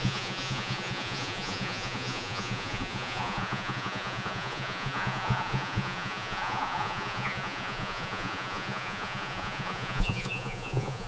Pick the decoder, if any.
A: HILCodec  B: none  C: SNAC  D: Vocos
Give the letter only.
D